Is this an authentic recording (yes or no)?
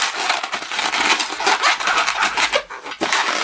yes